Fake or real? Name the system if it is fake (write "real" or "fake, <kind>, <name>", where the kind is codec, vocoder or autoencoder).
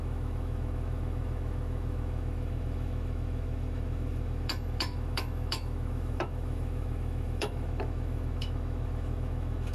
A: fake, autoencoder, DAC-VAE